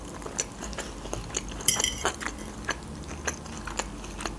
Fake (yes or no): no